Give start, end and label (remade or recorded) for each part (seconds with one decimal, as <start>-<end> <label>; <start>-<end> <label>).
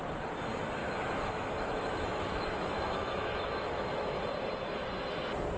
0.0-0.8 recorded; 0.8-4.2 remade; 4.2-5.6 recorded